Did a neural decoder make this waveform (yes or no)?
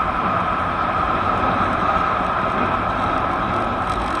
no